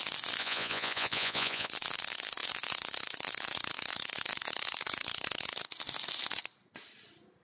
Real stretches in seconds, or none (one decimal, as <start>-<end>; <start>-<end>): 0.0-0.4; 1.7-7.4